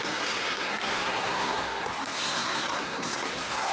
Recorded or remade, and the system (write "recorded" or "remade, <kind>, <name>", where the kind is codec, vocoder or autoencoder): remade, codec, SNAC